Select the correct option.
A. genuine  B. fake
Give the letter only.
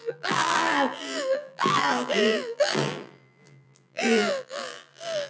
B